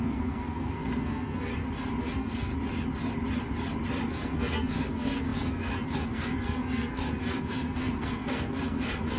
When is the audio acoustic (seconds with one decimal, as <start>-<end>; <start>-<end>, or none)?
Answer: 1.5-2.0; 2.5-4.1